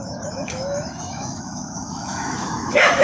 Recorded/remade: remade